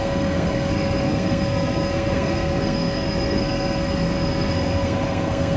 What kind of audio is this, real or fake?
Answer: fake